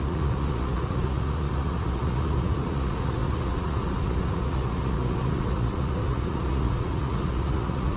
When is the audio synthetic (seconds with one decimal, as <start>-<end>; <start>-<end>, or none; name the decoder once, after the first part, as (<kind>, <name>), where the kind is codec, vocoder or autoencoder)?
0.0-8.0 (vocoder, Vocos)